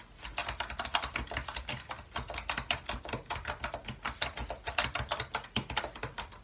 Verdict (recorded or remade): recorded